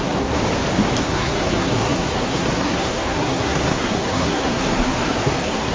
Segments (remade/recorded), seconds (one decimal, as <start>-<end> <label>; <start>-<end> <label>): 0.0-0.4 remade; 0.4-1.0 recorded; 1.0-5.7 remade